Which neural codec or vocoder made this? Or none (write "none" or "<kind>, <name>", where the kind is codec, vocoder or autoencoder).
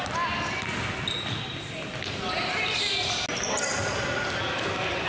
none